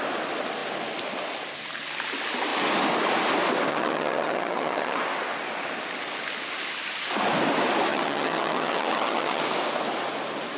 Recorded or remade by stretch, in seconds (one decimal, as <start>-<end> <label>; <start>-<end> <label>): 0.0-3.7 recorded; 3.7-5.0 remade; 5.0-7.9 recorded; 7.9-9.4 remade; 9.4-10.6 recorded